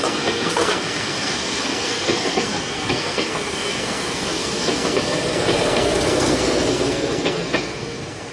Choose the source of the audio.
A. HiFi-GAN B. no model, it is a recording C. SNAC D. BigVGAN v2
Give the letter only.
C